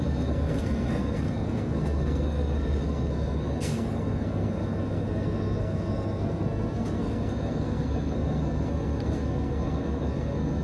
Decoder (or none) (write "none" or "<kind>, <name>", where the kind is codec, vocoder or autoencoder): codec, SNAC